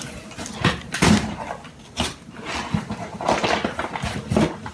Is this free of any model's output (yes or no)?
yes